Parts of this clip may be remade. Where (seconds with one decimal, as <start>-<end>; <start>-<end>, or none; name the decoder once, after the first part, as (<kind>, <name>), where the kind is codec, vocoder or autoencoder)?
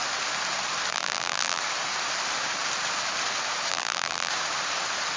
0.9-1.6 (vocoder, BigVGAN v2); 3.7-4.3